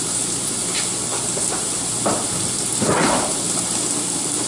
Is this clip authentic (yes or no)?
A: yes